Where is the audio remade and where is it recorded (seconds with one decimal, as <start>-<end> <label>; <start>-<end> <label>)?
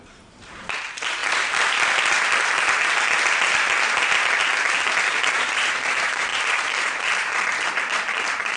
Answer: 0.0-1.2 remade; 1.2-5.3 recorded; 5.3-8.6 remade